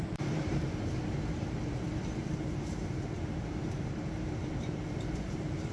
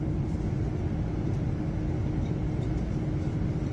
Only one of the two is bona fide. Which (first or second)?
second